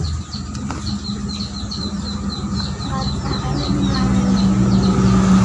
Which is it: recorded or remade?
recorded